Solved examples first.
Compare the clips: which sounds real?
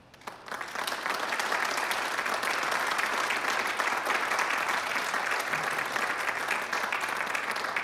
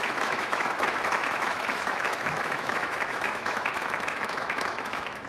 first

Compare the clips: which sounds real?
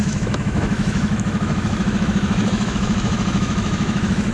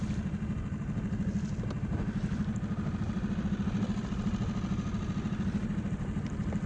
second